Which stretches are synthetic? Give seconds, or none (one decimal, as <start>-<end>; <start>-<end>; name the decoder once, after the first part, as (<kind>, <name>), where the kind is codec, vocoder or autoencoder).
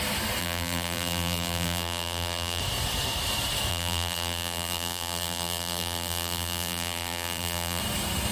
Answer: 0.4-2.6 (vocoder, BigVGAN v2); 3.7-7.8